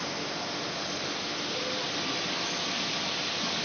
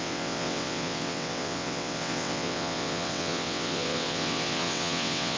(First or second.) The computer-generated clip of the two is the second